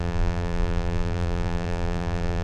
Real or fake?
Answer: fake